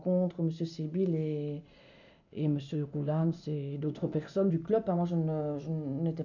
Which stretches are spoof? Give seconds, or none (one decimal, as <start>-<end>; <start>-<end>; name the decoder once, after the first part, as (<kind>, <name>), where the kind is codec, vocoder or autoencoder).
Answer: 1.8-4.5 (codec, ZipCodec)